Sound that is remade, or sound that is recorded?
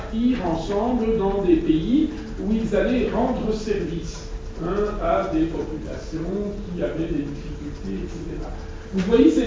recorded